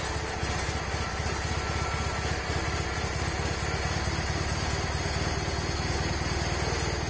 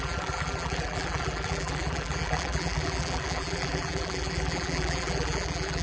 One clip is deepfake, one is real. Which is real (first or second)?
first